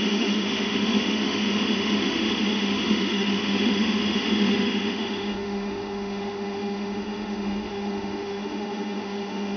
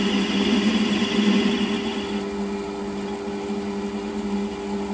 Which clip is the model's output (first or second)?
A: first